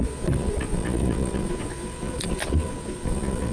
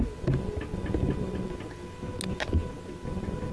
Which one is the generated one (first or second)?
first